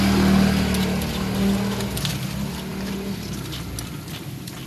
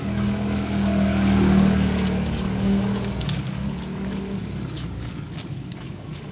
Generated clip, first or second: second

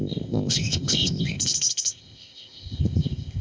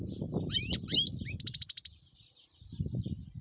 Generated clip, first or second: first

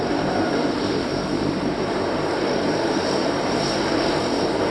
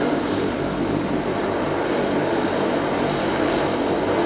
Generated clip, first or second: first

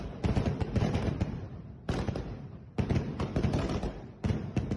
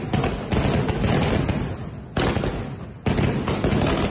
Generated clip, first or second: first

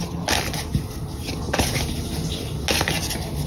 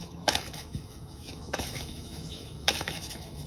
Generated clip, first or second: second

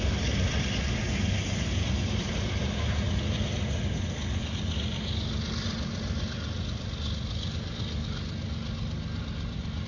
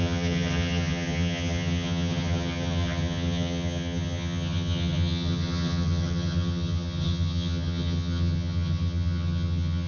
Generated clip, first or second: second